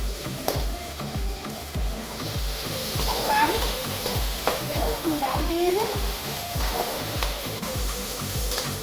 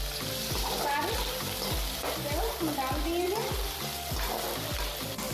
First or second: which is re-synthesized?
first